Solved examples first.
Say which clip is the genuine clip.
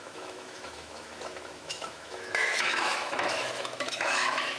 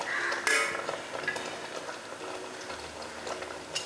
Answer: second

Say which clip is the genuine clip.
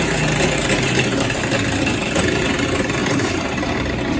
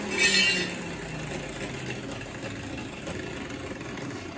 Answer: second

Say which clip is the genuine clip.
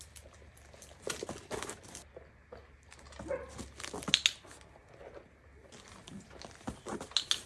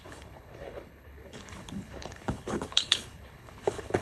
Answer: first